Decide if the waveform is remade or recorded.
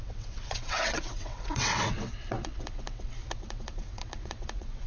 remade